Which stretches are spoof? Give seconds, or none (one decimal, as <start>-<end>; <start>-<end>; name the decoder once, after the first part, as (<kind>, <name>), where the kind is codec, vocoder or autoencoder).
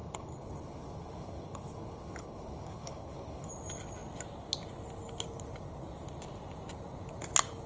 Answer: 0.0-3.5 (codec, HILCodec)